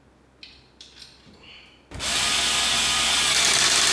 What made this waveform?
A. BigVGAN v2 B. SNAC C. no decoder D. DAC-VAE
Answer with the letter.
C